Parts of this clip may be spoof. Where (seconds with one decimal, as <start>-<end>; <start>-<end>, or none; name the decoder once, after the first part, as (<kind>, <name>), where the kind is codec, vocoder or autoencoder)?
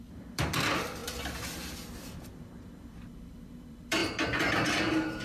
0.0-1.0 (vocoder, BigVGAN v2); 1.7-5.2